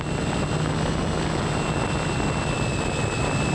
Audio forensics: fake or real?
real